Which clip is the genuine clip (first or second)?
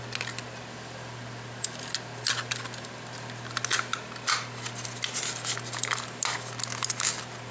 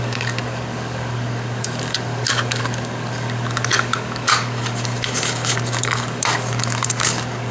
first